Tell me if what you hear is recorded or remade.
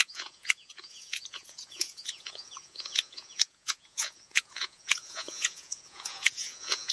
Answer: remade